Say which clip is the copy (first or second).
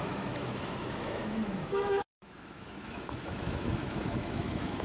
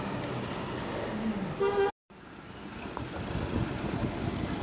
first